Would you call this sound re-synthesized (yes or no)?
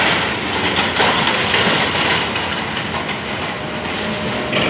no